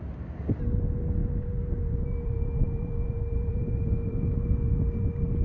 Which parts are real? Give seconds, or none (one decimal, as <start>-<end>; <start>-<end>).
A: 0.0-1.2; 4.4-5.4

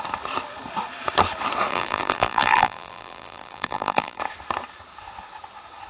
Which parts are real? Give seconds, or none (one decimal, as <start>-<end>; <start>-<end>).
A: 0.0-1.7; 4.2-5.9

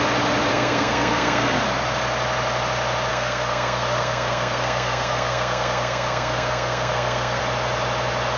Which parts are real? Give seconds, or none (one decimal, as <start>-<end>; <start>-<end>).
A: 0.0-0.5; 1.6-3.1; 7.4-8.4

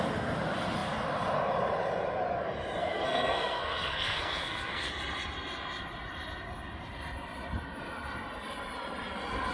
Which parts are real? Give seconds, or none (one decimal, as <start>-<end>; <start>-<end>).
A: 0.0-2.8; 4.9-9.5

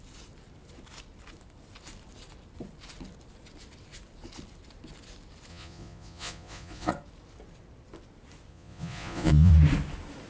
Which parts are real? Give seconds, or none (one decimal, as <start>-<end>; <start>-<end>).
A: 0.0-5.5; 6.9-8.5; 9.5-10.3

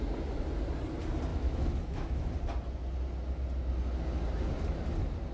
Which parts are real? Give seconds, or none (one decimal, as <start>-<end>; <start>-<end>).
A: 0.0-1.3; 2.2-5.3

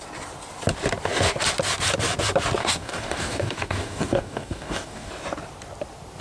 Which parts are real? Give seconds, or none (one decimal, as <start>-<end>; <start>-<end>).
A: 0.0-2.6; 5.1-6.2